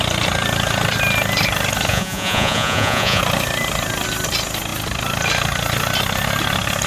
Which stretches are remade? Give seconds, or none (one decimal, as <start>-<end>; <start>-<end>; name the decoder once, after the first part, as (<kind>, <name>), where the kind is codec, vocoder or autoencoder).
1.9-3.2 (vocoder, Vocos)